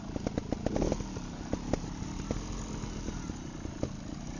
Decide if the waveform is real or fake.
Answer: real